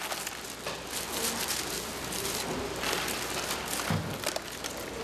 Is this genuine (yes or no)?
yes